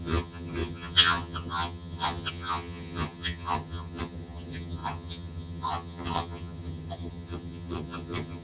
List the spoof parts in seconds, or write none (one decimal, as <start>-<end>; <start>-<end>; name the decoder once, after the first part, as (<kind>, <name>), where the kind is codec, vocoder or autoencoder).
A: 0.0-8.4 (vocoder, HiFi-GAN)